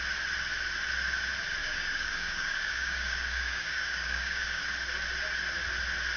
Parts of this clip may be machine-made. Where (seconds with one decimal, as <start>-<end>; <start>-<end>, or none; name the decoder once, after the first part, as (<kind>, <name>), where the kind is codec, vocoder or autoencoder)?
1.6-4.6 (codec, DAC)

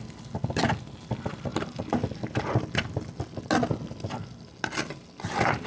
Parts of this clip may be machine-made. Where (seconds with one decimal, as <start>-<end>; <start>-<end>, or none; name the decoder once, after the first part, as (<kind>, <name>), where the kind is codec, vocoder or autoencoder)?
none

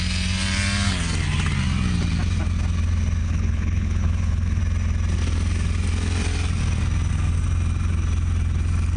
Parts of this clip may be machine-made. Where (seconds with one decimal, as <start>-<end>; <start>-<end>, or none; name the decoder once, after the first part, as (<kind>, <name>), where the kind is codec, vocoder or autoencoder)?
3.2-4.6 (codec, HILCodec)

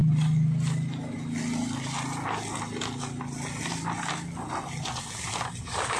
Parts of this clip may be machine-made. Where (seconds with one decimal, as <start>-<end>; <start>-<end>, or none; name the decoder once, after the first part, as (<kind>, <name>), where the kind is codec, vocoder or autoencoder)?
none

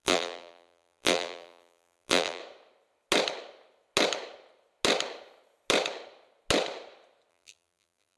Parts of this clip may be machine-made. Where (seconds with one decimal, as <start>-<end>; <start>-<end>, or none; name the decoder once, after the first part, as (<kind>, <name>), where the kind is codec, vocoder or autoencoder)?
0.0-2.4 (vocoder, BigVGAN v2); 7.3-8.2

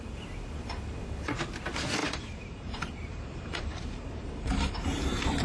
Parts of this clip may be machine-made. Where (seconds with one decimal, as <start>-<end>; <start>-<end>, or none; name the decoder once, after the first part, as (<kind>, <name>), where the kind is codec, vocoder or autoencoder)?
2.0-5.4 (vocoder, BigVGAN v2)

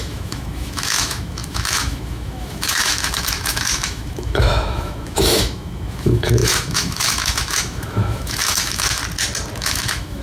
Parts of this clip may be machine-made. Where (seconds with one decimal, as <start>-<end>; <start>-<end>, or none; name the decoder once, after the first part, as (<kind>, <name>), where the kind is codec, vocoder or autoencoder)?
0.0-9.0 (autoencoder, DAC-VAE); 9.6-10.2

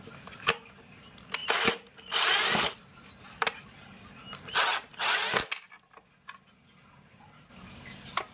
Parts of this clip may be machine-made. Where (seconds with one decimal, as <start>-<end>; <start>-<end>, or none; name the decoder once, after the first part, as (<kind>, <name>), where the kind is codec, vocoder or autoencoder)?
none